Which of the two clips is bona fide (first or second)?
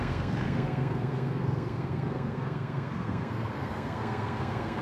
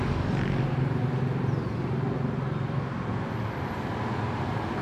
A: second